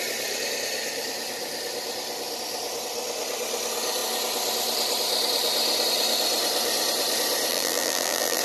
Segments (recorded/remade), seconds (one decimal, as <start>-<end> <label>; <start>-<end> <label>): 0.0-7.5 recorded; 7.5-8.4 remade